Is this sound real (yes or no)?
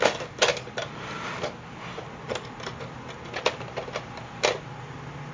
yes